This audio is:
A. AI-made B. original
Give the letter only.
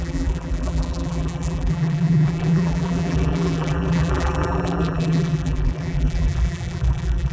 A